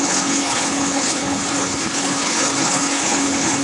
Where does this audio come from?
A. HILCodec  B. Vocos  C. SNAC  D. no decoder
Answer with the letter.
A